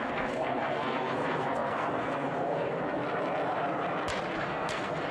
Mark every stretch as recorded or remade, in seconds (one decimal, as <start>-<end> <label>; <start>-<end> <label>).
0.0-3.0 remade; 3.0-4.4 recorded; 4.4-5.1 remade